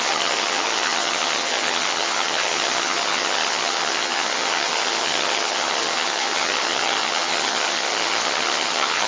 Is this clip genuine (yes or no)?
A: no